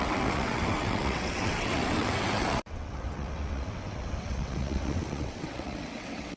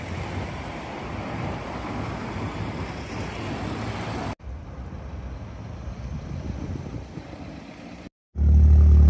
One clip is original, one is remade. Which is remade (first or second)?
first